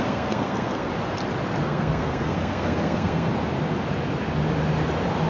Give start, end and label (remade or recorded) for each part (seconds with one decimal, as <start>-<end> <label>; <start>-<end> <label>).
0.0-0.9 remade; 0.9-1.6 recorded; 1.6-3.3 remade; 3.3-5.3 recorded